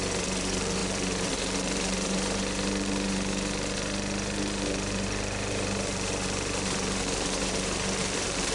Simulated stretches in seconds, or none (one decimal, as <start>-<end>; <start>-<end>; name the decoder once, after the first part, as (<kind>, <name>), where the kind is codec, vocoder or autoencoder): 0.0-8.5 (vocoder, BigVGAN v2)